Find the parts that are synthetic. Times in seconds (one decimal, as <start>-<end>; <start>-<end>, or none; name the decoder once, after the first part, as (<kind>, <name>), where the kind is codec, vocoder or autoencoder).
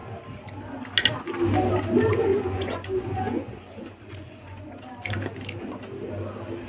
2.3-4.8 (vocoder, Vocos)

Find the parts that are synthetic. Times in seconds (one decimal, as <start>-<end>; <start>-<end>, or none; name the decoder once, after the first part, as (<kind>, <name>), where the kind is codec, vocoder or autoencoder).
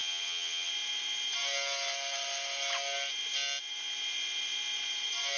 0.0-0.7 (vocoder, HiFi-GAN)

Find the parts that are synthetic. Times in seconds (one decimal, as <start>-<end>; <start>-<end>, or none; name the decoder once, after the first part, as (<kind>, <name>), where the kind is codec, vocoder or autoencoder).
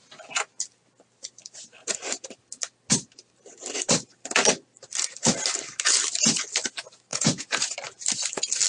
7.1-7.7 (vocoder, Vocos)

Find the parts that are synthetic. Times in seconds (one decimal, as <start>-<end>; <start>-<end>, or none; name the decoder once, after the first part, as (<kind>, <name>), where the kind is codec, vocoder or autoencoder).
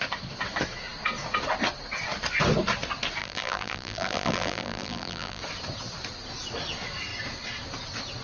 3.2-5.4 (vocoder, BigVGAN v2)